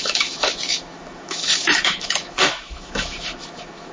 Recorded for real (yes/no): no